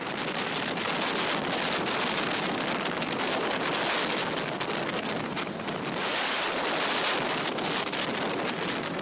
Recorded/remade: recorded